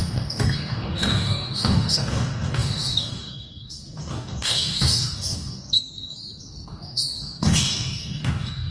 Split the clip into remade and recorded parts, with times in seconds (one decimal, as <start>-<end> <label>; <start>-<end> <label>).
0.0-8.7 remade